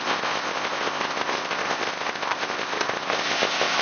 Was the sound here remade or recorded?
remade